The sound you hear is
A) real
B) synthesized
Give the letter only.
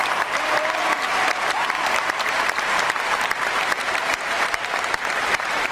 B